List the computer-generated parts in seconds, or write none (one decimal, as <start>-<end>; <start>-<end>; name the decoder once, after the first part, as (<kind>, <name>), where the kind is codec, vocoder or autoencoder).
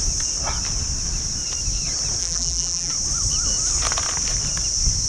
2.2-2.9 (vocoder, BigVGAN v2)